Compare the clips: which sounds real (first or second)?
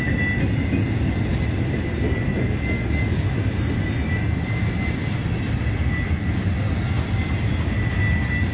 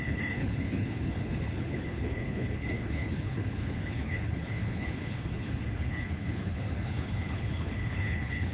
first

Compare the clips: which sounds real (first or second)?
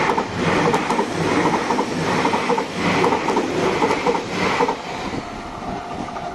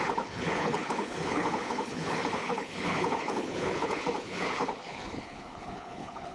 first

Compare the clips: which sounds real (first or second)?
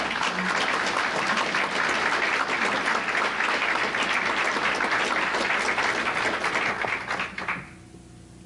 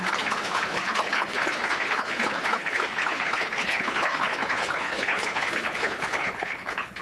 first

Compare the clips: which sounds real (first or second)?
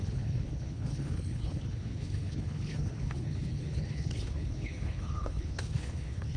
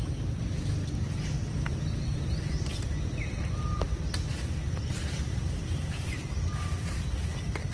second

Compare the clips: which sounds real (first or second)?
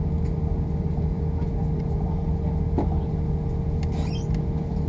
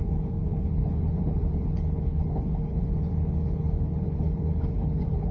first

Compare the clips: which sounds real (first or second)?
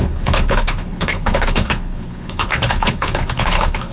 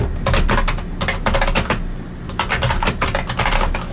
second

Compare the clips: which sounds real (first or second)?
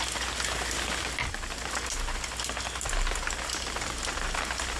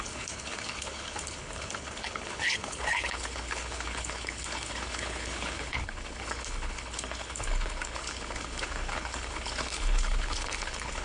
first